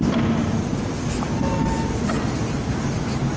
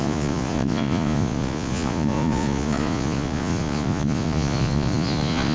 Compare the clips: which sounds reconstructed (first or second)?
second